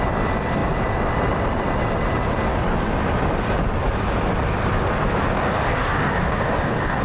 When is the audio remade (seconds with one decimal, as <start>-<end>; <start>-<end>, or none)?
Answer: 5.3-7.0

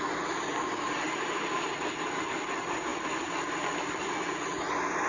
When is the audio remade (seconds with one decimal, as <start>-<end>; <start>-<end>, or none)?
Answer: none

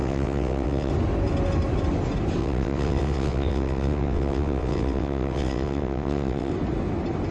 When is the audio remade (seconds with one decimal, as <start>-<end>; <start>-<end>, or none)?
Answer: 0.0-0.9; 2.4-6.5